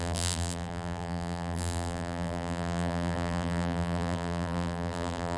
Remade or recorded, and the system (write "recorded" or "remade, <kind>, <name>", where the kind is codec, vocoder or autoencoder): remade, vocoder, BigVGAN v2